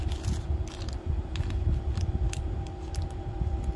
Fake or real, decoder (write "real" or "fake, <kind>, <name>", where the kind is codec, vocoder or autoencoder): real